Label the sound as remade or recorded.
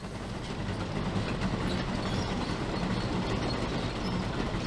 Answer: recorded